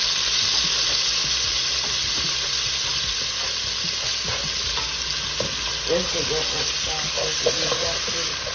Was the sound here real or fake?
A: real